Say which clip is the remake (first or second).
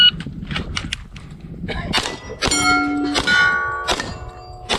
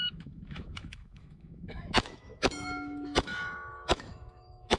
second